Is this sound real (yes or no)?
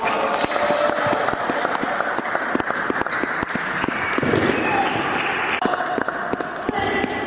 yes